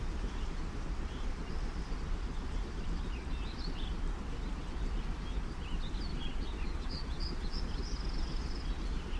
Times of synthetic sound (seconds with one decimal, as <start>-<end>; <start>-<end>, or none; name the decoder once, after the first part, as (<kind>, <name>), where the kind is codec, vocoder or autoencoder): 6.1-7.6 (vocoder, Vocos)